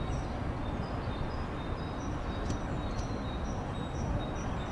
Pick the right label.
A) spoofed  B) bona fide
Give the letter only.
B